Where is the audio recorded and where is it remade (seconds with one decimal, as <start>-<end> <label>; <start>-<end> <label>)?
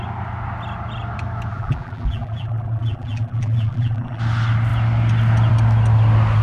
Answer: 0.0-1.5 recorded; 1.5-4.2 remade; 4.2-6.4 recorded